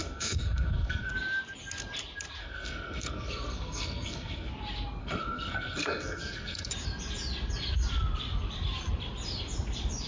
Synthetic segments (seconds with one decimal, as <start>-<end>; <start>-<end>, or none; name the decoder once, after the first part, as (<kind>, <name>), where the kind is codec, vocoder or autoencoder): 0.0-1.1 (codec, SNAC); 2.4-4.5; 5.0-6.7